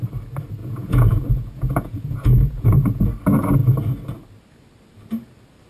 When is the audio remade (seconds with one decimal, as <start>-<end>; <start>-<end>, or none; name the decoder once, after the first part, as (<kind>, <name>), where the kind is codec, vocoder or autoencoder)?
0.6-3.1 (vocoder, Vocos)